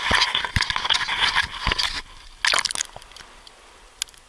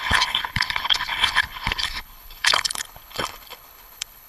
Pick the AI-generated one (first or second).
second